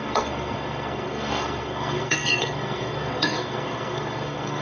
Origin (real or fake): fake